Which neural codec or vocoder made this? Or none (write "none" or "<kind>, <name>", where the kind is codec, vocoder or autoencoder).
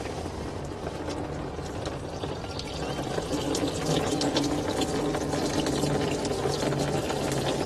none